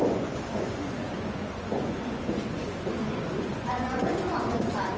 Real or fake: fake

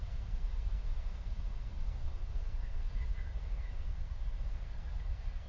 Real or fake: fake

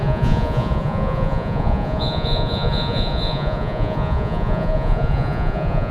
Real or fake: fake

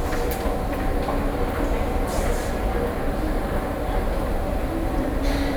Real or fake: real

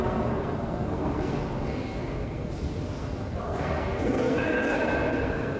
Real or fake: fake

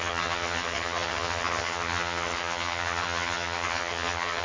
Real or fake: fake